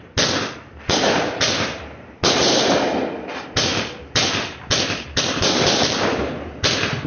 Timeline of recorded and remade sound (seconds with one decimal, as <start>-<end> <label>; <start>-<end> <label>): 0.0-7.1 recorded